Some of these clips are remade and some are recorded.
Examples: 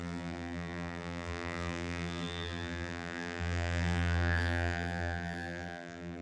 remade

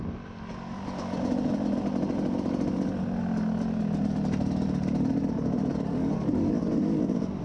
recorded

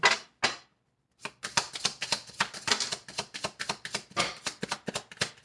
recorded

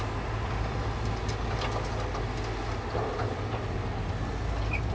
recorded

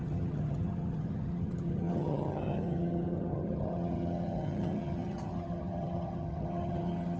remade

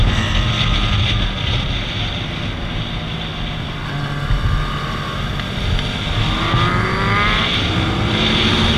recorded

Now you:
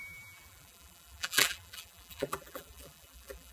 remade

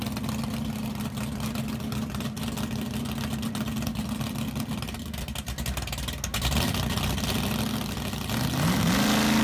recorded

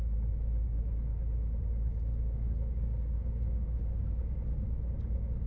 remade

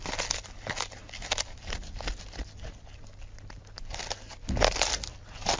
recorded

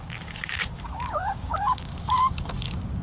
remade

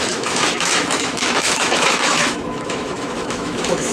remade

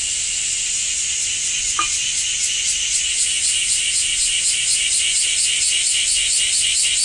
recorded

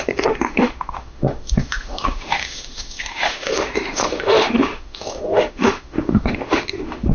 remade